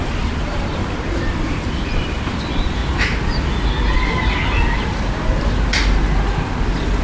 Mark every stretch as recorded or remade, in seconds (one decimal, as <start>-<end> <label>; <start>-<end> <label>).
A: 0.0-2.8 remade; 2.8-7.0 recorded